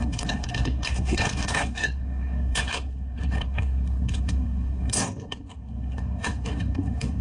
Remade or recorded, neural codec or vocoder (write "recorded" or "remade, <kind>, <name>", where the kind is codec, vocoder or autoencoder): remade, codec, SNAC